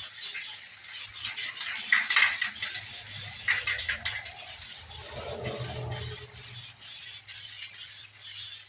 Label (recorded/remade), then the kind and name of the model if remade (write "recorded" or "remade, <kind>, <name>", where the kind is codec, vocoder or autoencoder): recorded